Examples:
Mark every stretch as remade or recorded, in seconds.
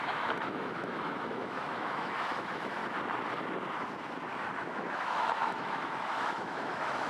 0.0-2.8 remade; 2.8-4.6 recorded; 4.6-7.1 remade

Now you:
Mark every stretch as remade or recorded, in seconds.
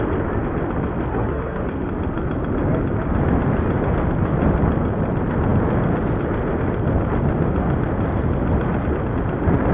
0.0-1.1 recorded; 1.1-1.6 remade; 1.6-9.7 recorded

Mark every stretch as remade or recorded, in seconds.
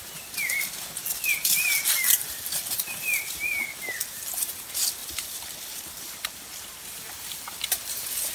0.0-1.0 recorded; 1.0-1.8 remade; 1.8-5.0 recorded; 5.0-7.7 remade; 7.7-8.3 recorded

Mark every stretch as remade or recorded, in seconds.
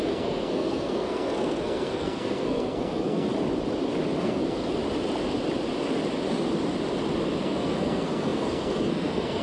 0.0-3.3 remade; 3.3-4.2 recorded; 4.2-4.8 remade; 4.8-7.4 recorded; 7.4-9.4 remade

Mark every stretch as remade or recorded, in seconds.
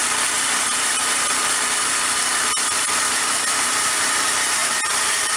0.0-3.2 remade; 3.2-4.6 recorded; 4.6-5.4 remade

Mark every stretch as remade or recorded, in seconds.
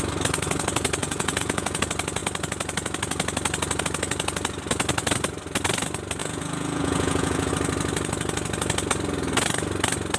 0.0-1.0 recorded; 1.0-1.8 remade; 1.8-6.2 recorded; 6.2-7.5 remade; 7.5-10.2 recorded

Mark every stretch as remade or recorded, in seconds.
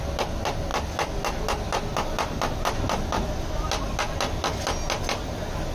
0.0-5.7 recorded